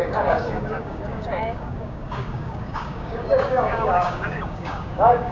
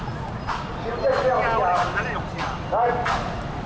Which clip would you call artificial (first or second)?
first